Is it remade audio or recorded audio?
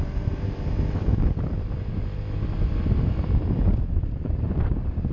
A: remade